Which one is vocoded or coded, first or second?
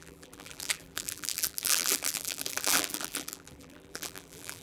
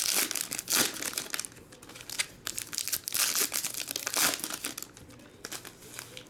first